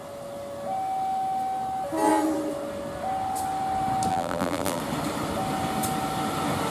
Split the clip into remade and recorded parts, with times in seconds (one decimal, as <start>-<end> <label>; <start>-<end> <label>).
0.0-4.1 recorded; 4.1-4.8 remade; 4.8-6.7 recorded